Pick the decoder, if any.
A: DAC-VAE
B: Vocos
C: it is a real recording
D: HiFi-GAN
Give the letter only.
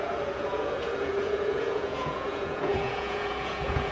B